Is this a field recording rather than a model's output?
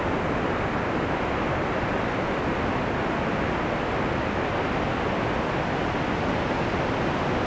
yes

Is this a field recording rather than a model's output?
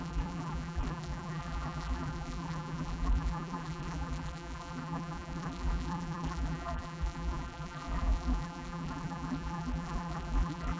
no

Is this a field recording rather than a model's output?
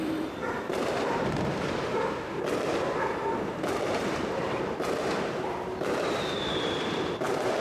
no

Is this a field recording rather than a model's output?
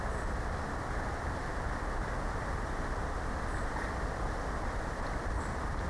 no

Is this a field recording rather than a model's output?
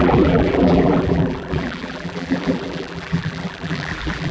no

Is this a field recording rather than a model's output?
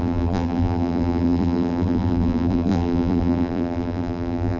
no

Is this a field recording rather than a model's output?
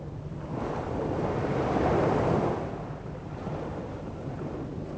yes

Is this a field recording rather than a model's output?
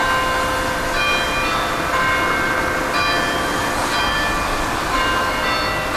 yes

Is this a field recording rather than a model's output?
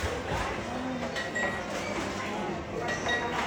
yes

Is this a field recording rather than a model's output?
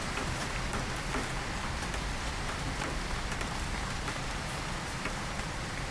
yes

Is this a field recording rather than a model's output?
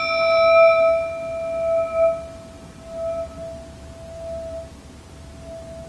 yes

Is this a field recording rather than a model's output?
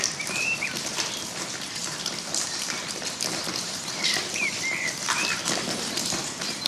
no